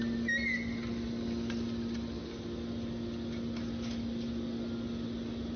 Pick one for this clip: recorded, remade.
recorded